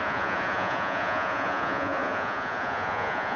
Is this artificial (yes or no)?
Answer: yes